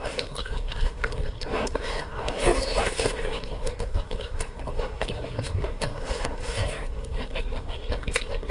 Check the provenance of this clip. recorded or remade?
remade